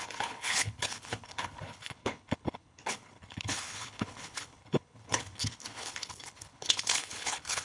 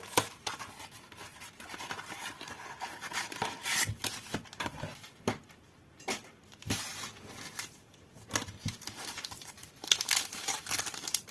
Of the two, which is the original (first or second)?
second